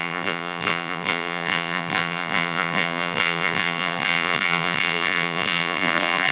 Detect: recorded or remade remade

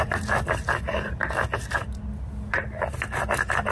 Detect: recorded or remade recorded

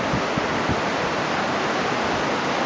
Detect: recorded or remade recorded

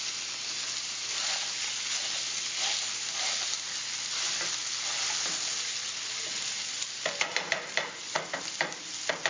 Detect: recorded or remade recorded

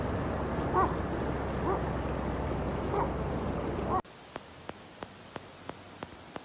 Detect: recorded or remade recorded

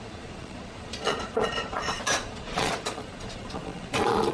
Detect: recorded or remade remade